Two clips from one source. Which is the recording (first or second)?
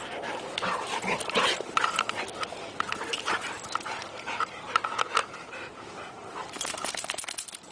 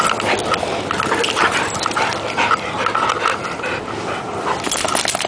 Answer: second